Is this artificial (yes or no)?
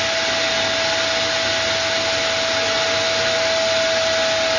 no